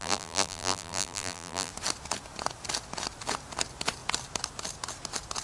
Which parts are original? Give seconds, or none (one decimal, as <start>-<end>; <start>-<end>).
1.7-5.4